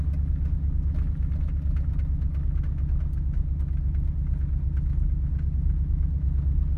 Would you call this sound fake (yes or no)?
no